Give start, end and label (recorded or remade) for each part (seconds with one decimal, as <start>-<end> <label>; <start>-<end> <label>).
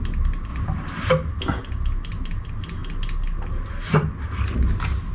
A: 0.0-0.5 recorded; 0.5-1.1 remade; 1.1-5.1 recorded